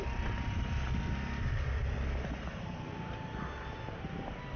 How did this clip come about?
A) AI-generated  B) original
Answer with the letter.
B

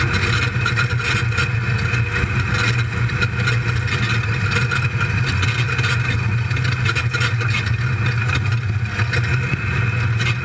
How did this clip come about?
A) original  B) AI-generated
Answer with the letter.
A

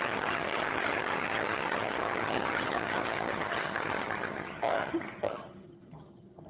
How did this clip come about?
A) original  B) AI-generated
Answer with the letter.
B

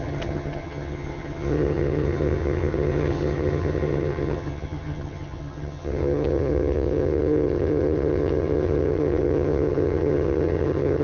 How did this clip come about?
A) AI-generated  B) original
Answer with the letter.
A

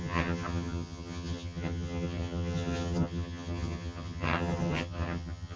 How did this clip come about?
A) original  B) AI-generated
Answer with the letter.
B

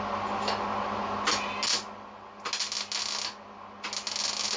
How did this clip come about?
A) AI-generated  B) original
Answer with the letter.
B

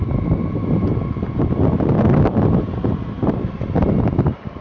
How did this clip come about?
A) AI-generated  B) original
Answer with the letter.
B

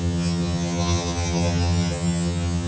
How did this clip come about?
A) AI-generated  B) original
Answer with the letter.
A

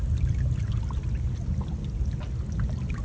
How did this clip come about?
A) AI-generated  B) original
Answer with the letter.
B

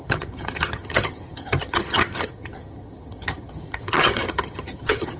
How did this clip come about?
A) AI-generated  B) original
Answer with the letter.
A